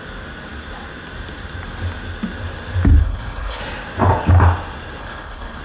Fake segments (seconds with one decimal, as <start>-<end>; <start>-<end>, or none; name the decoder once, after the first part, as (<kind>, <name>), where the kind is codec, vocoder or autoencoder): 3.0-3.6 (codec, HILCodec); 5.0-5.6

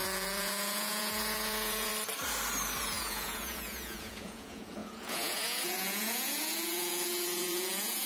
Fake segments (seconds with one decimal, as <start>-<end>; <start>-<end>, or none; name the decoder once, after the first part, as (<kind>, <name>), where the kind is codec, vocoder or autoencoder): 0.0-1.9 (vocoder, Vocos); 2.8-8.1

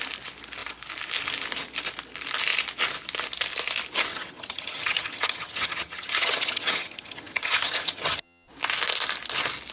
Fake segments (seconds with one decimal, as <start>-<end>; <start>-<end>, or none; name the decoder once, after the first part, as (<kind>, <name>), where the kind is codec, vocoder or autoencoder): 4.1-8.5 (vocoder, HiFi-GAN)

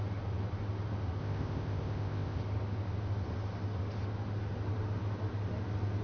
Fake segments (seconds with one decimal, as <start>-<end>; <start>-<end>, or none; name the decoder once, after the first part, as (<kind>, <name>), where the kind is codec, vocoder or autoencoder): 1.2-2.4 (codec, ZipCodec)